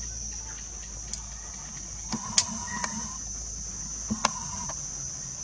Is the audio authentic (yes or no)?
yes